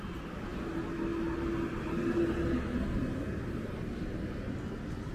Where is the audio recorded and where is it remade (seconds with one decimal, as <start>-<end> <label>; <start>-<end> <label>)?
0.0-5.1 recorded